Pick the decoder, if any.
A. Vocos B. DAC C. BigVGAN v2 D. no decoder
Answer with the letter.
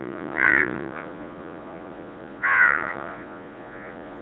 A